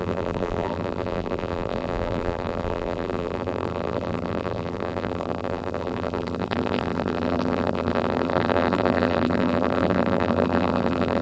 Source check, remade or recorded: remade